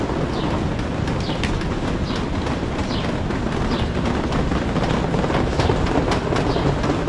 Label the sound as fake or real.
real